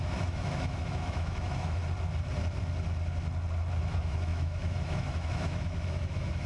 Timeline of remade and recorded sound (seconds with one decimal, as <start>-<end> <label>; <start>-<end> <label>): 0.0-1.8 remade; 1.8-3.8 recorded; 3.8-6.5 remade